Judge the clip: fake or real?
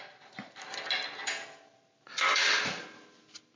real